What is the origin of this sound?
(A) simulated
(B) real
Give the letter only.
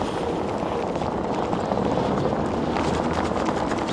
B